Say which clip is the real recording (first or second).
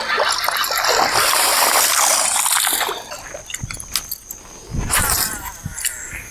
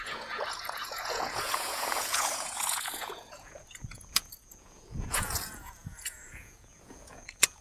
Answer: first